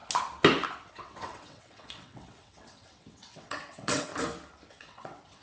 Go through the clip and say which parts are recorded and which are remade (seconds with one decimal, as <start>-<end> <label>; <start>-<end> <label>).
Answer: 0.0-0.9 recorded; 0.9-4.1 remade; 4.1-4.7 recorded; 4.7-5.4 remade